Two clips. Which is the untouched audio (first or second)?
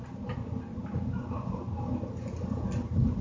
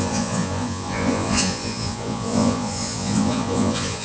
first